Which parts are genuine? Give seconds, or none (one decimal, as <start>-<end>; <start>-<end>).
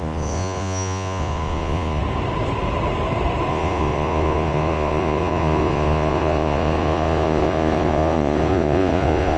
2.0-3.5